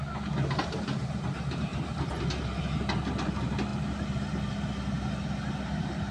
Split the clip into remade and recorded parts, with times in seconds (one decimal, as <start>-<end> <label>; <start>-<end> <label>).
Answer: 0.0-6.1 recorded